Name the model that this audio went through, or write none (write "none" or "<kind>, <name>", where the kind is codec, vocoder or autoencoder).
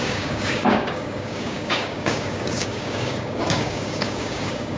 codec, DAC